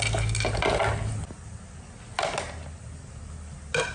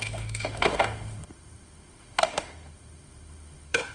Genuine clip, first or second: first